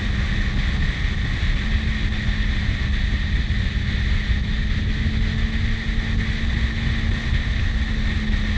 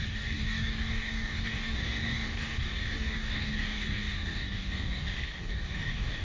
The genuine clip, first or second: first